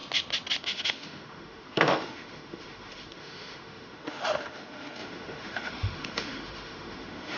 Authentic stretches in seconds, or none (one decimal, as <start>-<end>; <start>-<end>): 0.0-0.6